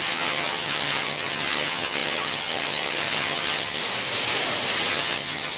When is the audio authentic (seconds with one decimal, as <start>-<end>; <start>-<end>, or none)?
3.8-4.9